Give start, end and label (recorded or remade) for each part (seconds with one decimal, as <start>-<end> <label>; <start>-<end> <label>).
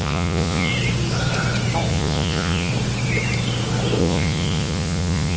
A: 0.0-0.7 remade; 0.7-1.9 recorded; 1.9-2.7 remade; 2.7-4.0 recorded; 4.0-5.4 remade